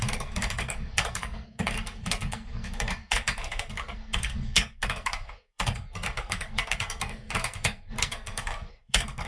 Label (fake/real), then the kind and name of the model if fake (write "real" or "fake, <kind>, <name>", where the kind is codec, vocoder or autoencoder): fake, codec, SNAC